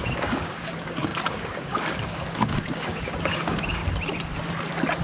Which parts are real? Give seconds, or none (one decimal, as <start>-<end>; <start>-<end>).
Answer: 3.8-5.0